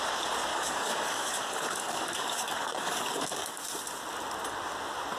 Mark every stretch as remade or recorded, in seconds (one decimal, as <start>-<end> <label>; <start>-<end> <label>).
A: 0.0-0.5 recorded; 0.5-3.6 remade; 3.6-5.2 recorded